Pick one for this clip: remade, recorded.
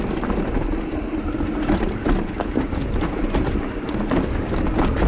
recorded